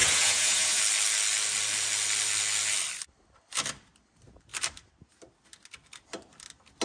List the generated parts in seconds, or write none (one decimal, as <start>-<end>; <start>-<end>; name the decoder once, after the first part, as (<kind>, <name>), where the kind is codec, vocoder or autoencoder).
0.0-0.8 (vocoder, Vocos)